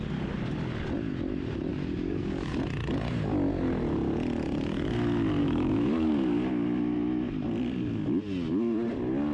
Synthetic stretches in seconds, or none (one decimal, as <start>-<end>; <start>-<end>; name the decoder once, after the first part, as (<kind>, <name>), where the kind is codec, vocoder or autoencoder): 1.7-2.5 (codec, DAC); 5.4-6.5